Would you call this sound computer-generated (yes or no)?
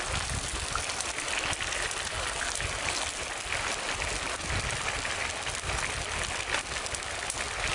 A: no